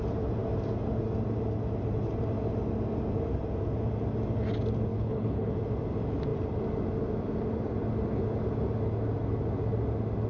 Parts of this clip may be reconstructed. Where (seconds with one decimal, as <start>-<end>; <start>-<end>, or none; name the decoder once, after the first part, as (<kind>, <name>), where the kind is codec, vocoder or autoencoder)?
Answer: 4.9-5.5 (codec, HILCodec)